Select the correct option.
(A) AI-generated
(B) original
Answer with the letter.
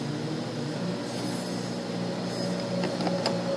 B